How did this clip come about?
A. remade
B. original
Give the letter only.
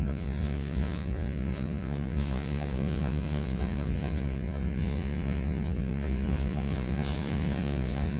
A